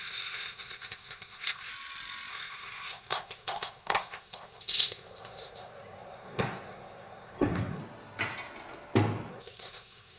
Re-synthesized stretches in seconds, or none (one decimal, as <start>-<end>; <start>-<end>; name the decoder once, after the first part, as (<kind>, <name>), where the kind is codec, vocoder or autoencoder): 0.0-1.7 (codec, SNAC); 2.3-7.8; 9.3-10.2